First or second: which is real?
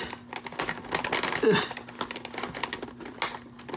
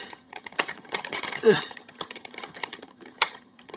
first